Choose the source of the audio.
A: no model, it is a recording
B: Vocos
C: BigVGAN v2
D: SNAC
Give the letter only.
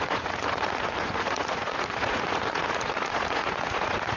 B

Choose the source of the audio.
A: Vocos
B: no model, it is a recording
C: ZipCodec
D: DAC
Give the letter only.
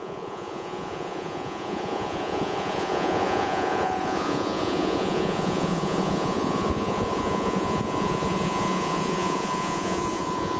A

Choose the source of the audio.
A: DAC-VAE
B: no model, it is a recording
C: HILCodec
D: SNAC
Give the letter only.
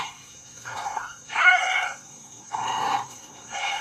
D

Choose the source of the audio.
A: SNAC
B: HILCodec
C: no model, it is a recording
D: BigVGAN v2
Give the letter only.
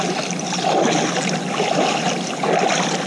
C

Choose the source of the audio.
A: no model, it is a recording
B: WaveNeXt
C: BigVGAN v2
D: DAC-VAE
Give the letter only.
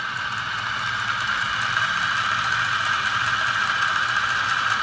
A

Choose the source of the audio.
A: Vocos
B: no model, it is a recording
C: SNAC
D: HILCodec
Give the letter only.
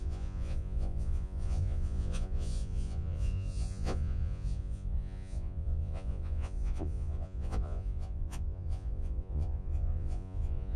A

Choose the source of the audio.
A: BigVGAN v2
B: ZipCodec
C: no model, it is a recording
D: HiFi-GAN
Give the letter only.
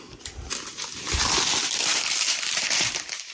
C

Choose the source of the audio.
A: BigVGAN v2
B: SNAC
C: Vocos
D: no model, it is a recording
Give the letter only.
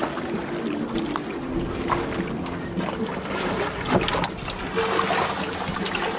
D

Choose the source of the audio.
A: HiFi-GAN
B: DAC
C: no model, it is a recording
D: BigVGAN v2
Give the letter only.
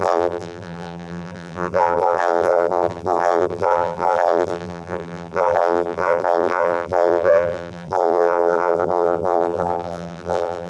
D